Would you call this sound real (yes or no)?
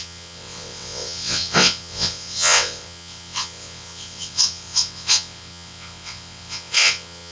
no